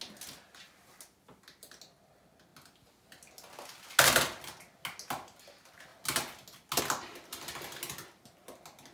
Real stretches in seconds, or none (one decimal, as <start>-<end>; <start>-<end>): 0.0-8.9

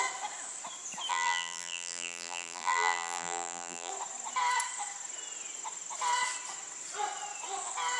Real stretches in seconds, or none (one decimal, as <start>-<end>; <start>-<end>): 0.0-1.1; 3.9-8.0

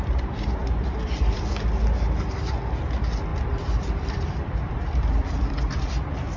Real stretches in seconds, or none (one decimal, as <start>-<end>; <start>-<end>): 0.0-0.6; 1.4-3.3

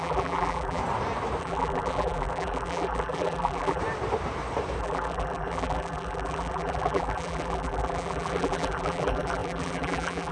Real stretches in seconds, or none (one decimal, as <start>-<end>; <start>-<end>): 0.8-1.4; 3.8-4.8

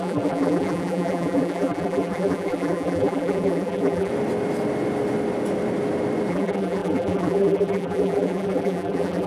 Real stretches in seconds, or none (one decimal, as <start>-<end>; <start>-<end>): 4.1-6.3

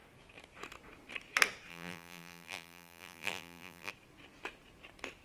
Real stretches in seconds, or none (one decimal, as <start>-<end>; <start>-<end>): 0.0-1.7; 3.9-5.2